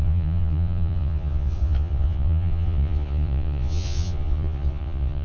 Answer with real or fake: fake